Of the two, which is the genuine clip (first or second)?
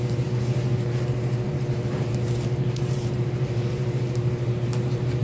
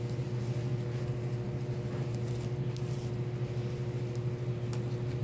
second